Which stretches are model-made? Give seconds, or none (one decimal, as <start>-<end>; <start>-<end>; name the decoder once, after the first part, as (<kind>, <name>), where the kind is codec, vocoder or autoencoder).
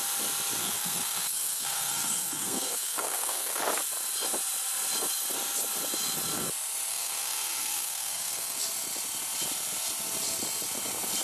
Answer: 0.6-3.6 (codec, SNAC); 6.9-8.6